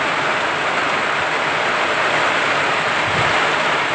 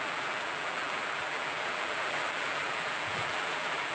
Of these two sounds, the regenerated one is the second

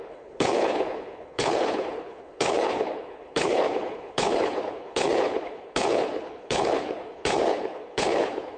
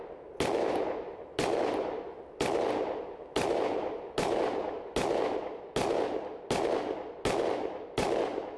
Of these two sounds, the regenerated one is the first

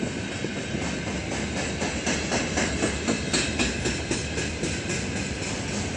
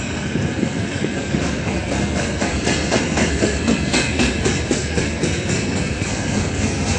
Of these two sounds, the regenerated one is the second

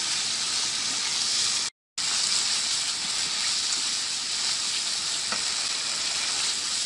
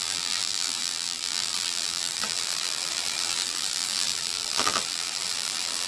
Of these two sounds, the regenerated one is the second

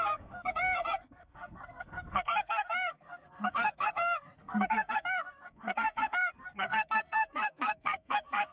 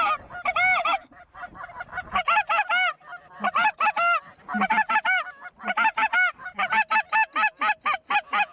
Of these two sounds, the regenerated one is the first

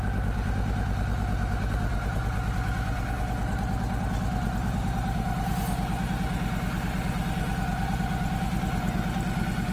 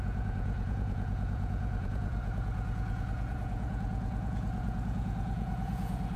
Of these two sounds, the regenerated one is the second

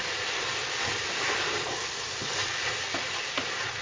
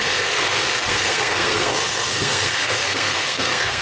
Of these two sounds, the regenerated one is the second